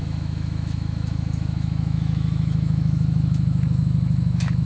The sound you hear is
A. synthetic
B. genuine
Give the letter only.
A